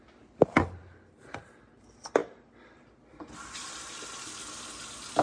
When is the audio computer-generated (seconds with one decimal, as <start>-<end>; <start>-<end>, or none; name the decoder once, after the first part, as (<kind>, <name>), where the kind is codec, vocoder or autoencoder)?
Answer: none